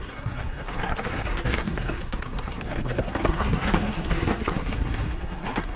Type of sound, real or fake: fake